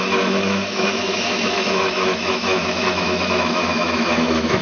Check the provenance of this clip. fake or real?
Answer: fake